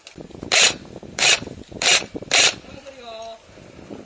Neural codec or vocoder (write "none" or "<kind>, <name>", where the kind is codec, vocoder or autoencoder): none